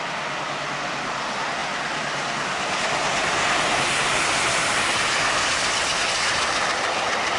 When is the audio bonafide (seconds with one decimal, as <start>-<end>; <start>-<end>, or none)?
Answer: 0.0-7.4